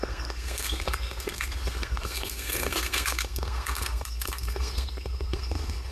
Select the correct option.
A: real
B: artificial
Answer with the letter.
B